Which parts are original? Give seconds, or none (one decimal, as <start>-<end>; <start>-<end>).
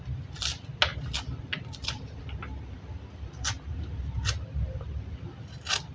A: 0.0-5.9